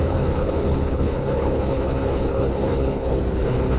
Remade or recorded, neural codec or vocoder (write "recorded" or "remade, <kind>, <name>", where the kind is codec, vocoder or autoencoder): remade, codec, HILCodec